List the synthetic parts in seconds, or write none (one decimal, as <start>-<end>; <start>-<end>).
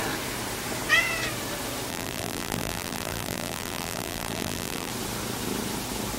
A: 1.9-4.9